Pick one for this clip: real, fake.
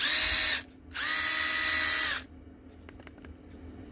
real